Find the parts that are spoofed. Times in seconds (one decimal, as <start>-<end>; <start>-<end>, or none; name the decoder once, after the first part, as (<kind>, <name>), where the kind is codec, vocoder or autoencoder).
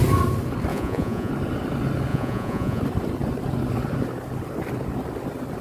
0.7-1.3 (vocoder, Vocos); 2.1-2.8